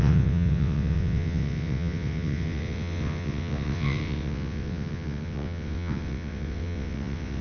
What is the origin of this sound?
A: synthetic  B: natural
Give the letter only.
A